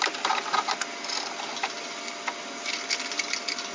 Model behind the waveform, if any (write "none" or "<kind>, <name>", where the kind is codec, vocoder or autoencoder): none